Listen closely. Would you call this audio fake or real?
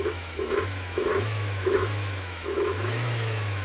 fake